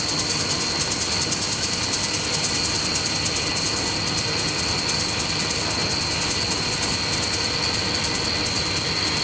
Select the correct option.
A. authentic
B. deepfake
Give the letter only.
A